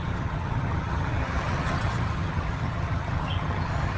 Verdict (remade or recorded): remade